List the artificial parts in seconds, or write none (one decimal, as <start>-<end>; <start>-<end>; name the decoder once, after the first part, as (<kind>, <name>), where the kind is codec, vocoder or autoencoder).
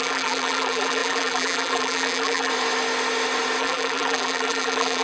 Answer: 0.0-2.5 (vocoder, BigVGAN v2); 3.6-5.0